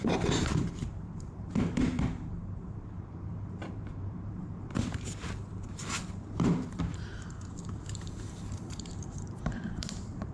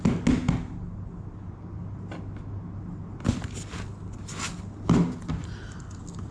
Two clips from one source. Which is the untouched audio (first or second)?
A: second